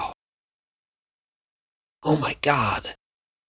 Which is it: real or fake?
real